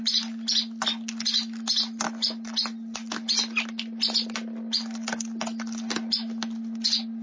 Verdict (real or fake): real